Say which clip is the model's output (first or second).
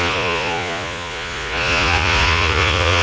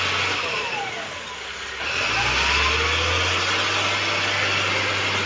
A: first